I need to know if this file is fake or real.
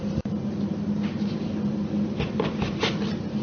real